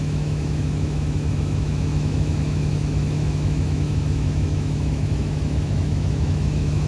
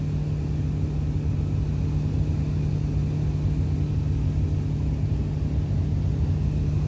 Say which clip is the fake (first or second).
first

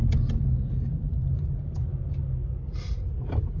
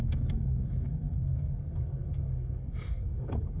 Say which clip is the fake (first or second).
second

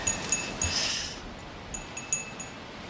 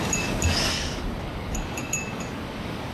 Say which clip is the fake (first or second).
second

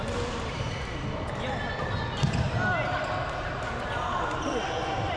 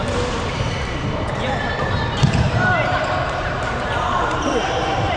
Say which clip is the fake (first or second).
second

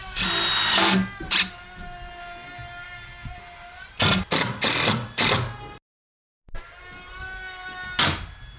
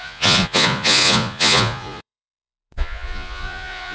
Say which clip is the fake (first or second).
second